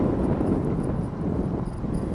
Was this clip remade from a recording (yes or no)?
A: no